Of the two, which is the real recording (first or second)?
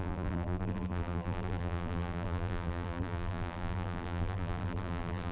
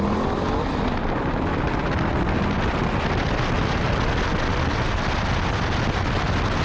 second